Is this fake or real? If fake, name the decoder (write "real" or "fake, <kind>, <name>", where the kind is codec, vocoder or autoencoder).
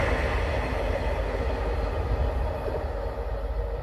real